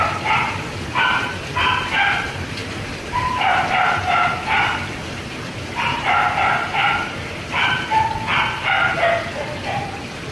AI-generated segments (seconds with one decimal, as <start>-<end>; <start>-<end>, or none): 2.6-4.3; 5.0-7.9